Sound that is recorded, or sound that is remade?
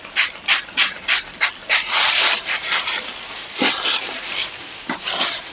remade